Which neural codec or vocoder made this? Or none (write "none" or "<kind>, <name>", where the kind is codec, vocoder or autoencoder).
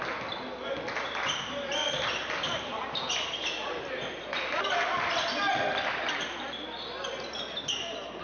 none